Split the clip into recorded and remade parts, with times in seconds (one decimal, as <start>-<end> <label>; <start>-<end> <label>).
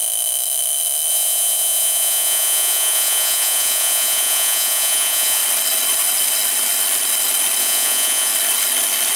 0.0-1.1 recorded; 1.1-5.4 remade; 5.4-7.6 recorded; 7.6-8.3 remade; 8.3-9.2 recorded